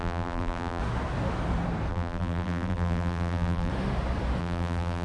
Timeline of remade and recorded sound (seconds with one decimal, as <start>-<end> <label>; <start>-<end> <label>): 0.0-0.8 remade; 0.8-1.9 recorded; 1.9-3.7 remade; 3.7-4.4 recorded; 4.4-5.0 remade